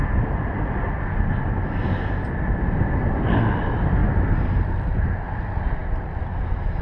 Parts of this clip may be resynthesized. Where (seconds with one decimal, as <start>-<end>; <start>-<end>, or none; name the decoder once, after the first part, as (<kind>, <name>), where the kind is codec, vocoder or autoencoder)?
4.0-5.3 (vocoder, BigVGAN v2); 5.8-6.8